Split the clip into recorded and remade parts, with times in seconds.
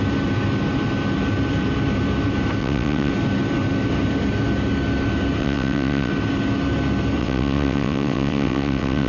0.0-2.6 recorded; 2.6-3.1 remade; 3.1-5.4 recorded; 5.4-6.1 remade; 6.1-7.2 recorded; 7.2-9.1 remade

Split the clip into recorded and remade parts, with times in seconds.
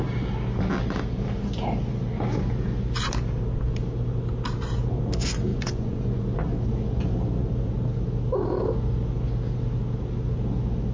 0.0-5.5 recorded; 5.5-6.2 remade; 6.2-10.9 recorded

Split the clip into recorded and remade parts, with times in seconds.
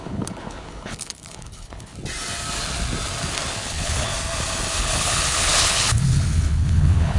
0.0-1.9 remade; 1.9-3.5 recorded; 3.5-4.1 remade; 4.1-4.8 recorded; 4.8-7.2 remade